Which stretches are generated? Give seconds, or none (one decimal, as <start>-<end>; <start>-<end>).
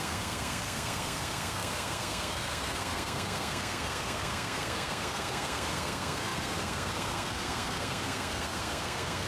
0.0-9.3